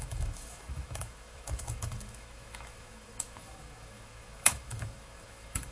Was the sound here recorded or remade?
remade